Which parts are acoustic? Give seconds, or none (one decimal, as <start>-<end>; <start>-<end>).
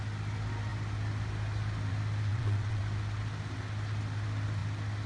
0.0-2.3; 2.8-5.1